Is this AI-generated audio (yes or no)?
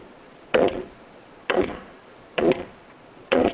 yes